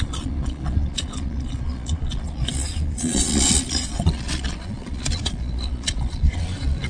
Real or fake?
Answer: fake